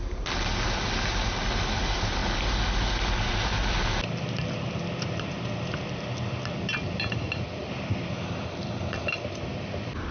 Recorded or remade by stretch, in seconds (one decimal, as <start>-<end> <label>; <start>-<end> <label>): 0.0-10.1 recorded